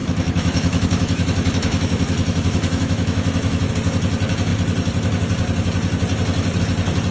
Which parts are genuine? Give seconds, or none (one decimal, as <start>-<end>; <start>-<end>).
3.7-7.1